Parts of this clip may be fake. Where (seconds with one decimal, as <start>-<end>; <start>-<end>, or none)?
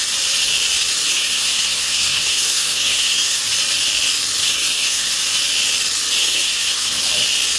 1.1-3.4; 4.4-5.1; 6.2-7.0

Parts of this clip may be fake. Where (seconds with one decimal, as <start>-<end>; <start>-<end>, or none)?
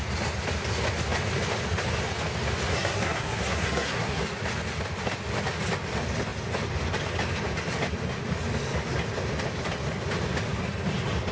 2.7-4.2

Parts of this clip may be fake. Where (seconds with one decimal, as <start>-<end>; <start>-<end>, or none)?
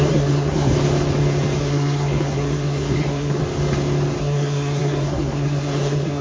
0.0-0.7; 1.6-3.4; 4.2-6.2